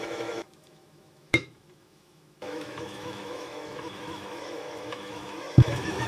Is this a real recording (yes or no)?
no